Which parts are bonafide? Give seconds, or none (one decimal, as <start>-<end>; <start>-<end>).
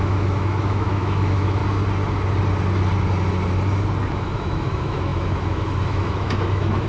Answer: 1.6-4.1